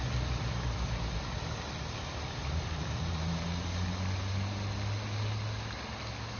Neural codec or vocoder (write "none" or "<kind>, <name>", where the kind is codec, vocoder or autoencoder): none